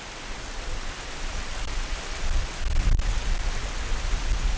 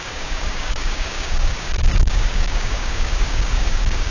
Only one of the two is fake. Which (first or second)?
second